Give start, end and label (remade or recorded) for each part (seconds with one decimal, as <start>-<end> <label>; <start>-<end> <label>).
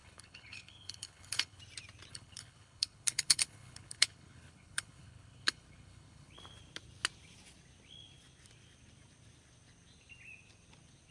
0.0-1.6 remade; 1.6-2.1 recorded; 2.1-6.3 remade; 6.3-11.1 recorded